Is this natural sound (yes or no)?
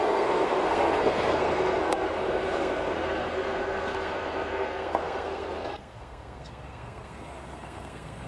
no